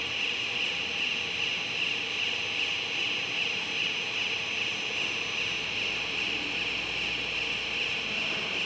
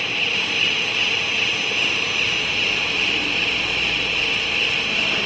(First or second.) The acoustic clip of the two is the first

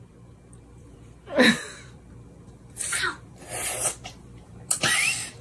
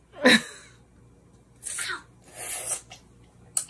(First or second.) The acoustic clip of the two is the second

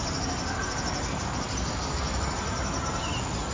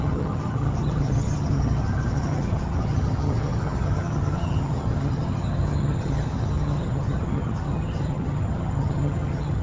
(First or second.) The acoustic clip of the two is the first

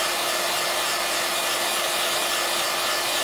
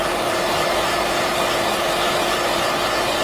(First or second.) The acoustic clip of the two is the first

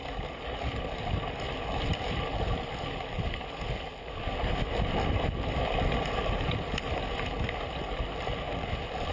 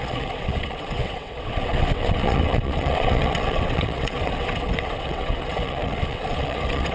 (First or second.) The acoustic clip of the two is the first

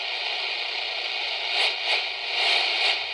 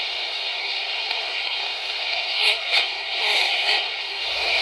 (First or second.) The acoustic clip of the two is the first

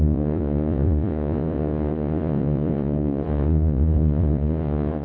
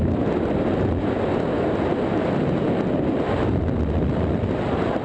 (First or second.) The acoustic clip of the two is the second